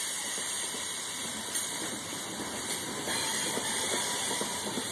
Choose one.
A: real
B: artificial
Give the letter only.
B